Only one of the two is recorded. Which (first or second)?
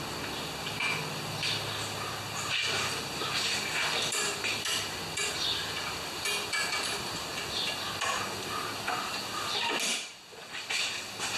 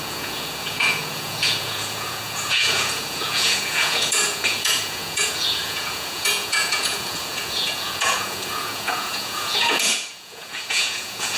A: first